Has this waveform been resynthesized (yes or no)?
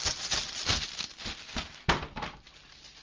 no